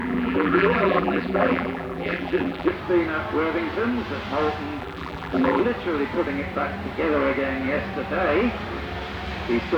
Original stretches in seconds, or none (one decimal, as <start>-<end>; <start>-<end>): 2.7-4.8; 5.6-9.8